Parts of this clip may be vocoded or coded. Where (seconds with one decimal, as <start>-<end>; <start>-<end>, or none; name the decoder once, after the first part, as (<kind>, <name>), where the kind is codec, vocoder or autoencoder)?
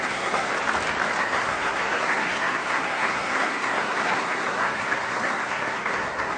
0.0-0.5 (codec, SNAC); 1.2-6.4